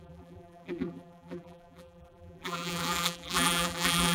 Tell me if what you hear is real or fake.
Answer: fake